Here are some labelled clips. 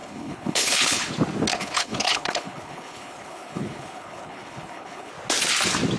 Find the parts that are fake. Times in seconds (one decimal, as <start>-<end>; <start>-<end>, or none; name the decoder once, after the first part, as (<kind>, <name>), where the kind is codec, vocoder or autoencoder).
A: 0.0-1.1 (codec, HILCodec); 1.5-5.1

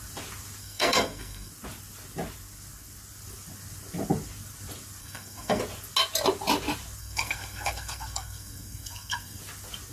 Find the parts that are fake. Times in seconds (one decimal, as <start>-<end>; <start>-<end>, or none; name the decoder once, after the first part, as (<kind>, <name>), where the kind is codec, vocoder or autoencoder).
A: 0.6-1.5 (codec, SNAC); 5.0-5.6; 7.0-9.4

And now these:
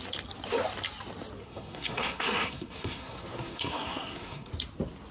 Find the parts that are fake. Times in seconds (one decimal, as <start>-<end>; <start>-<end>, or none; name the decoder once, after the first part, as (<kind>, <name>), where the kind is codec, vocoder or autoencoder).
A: 1.4-4.5 (codec, SNAC)

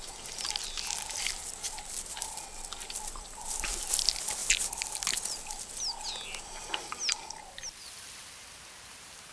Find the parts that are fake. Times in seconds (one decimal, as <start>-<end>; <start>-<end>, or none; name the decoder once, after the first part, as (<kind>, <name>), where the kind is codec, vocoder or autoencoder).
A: none